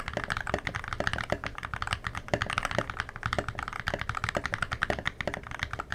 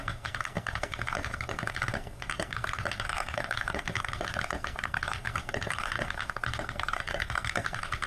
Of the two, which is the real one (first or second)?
first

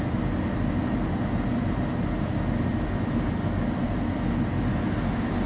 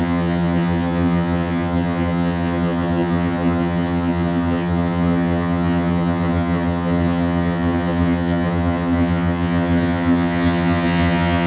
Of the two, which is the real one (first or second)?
first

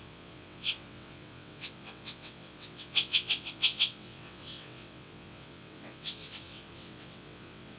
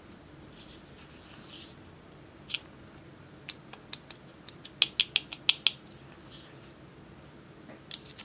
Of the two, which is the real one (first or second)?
second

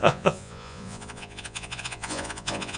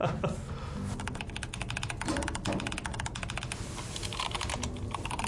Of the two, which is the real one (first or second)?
second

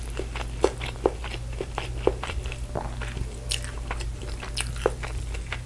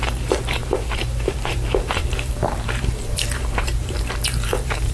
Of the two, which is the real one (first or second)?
first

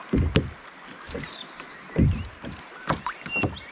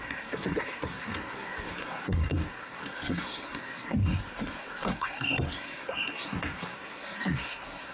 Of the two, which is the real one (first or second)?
first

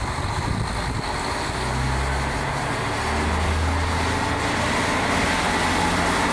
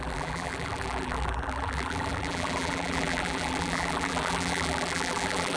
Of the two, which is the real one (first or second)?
first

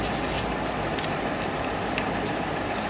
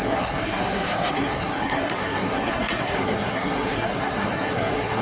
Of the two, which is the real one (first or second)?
first